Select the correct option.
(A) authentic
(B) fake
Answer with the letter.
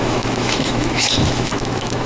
B